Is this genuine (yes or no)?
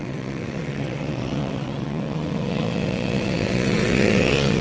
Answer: no